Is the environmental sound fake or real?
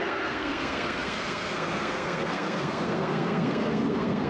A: fake